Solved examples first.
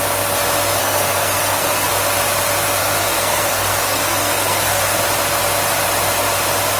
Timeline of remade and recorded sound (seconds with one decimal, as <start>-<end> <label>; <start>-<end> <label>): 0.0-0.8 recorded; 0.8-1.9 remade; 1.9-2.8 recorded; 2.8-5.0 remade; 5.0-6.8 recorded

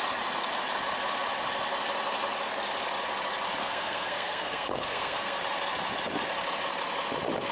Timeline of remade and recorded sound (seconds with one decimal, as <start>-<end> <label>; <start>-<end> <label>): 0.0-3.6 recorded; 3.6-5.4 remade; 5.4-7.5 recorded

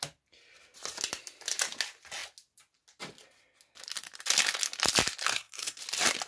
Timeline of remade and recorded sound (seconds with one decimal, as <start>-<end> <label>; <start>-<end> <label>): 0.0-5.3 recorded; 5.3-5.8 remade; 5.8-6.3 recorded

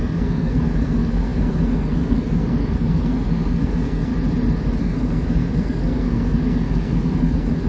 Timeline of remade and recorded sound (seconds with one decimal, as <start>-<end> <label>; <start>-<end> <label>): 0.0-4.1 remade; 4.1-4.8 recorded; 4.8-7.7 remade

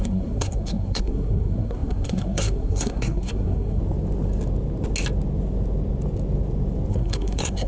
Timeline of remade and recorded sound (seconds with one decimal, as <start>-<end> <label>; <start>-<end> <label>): 0.0-3.8 remade; 3.8-6.9 recorded; 6.9-7.7 remade